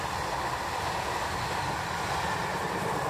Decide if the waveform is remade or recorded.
recorded